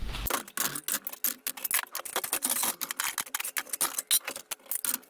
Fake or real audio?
real